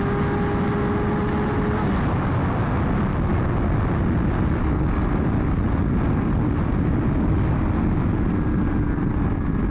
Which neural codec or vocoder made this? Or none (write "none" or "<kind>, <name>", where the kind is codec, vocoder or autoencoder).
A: none